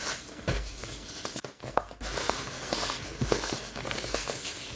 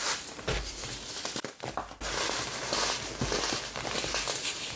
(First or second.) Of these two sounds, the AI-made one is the first